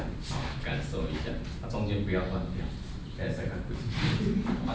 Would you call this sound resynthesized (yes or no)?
no